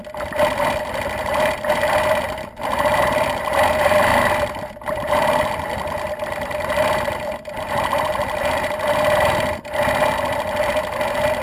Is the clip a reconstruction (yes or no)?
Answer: yes